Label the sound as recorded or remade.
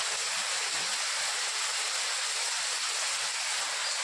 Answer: recorded